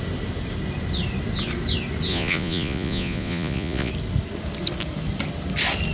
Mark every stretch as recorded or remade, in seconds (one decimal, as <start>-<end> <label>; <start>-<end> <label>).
0.0-2.1 recorded; 2.1-3.9 remade; 3.9-5.9 recorded